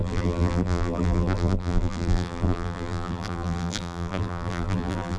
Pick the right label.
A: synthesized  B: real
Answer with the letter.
A